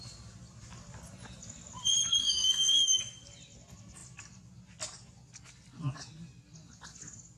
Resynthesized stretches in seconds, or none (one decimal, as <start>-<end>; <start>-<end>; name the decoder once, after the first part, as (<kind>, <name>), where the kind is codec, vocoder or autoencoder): 2.2-3.0 (autoencoder, DAC-VAE)